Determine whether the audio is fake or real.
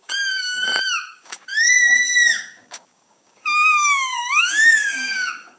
fake